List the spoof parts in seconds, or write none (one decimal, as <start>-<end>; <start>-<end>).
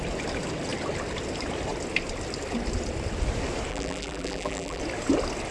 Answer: 3.7-4.8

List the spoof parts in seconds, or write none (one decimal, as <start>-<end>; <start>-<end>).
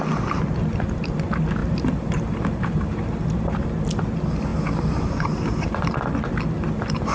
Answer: 1.6-3.8; 4.5-6.0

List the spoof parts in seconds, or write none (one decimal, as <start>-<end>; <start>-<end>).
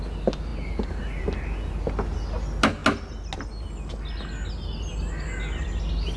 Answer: none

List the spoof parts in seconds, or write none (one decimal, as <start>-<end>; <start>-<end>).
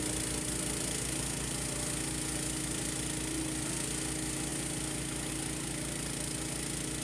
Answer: none